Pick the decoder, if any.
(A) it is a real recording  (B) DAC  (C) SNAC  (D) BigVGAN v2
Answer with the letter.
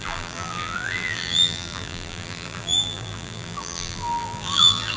D